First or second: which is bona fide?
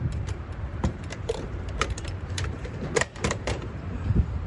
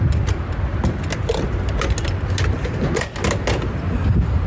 second